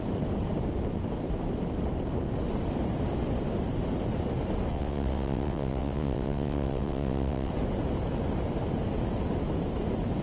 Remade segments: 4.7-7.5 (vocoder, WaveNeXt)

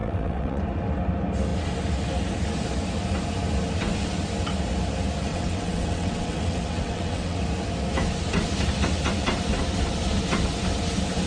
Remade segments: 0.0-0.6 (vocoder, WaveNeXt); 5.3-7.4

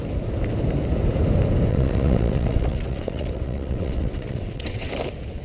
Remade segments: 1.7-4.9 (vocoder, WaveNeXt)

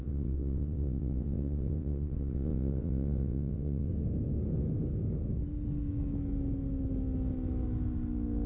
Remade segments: 0.0-3.9 (vocoder, WaveNeXt)

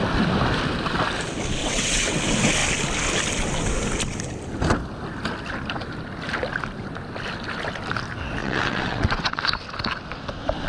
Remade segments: 1.6-2.2 (vocoder, WaveNeXt); 8.4-9.4

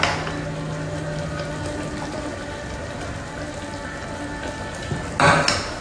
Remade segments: none

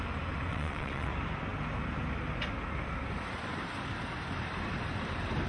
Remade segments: 0.5-1.1 (vocoder, WaveNeXt)